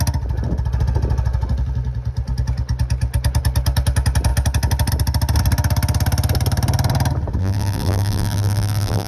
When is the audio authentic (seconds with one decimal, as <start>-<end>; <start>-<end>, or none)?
0.0-7.4